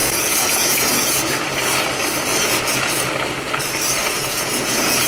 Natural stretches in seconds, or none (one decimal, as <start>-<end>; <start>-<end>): 1.5-2.3; 2.9-4.0